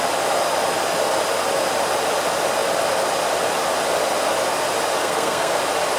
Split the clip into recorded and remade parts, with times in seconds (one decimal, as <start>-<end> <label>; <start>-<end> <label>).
0.0-5.0 recorded; 5.0-5.6 remade; 5.6-6.0 recorded